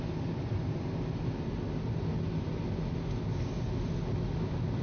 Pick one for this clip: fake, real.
real